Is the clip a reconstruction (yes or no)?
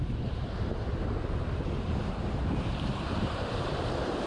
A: yes